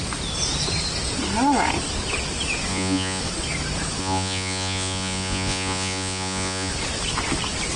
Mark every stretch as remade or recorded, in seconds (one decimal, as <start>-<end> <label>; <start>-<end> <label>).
0.0-2.7 recorded; 2.7-3.2 remade; 3.2-4.0 recorded; 4.0-6.7 remade; 6.7-7.8 recorded